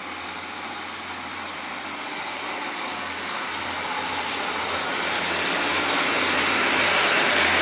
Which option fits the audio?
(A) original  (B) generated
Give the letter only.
A